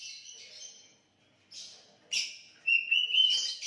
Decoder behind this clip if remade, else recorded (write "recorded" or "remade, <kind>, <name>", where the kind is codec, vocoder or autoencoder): recorded